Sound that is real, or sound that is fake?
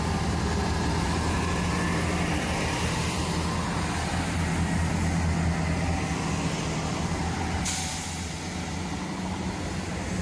real